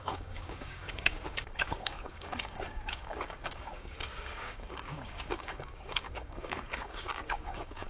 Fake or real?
fake